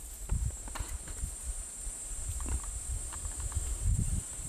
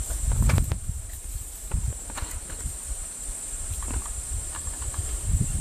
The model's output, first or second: second